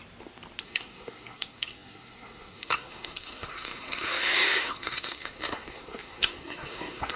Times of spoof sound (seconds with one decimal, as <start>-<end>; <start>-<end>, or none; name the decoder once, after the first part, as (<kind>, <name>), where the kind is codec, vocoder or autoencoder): 0.6-7.2 (codec, SNAC)